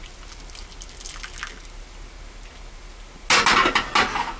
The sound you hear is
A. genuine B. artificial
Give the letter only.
A